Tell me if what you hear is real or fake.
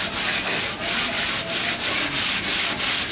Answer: real